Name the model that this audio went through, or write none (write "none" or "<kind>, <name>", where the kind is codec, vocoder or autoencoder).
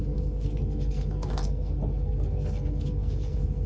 codec, SNAC